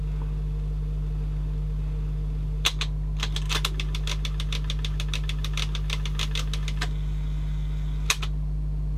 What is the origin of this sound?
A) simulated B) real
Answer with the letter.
B